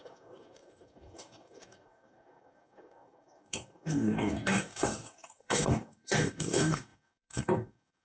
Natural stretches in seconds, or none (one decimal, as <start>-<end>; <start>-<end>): none